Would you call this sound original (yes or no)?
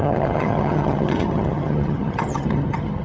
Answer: no